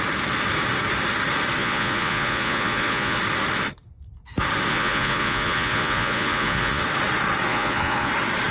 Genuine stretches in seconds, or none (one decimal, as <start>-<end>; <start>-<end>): 0.0-1.6; 3.2-4.7; 6.8-7.5; 8.1-8.5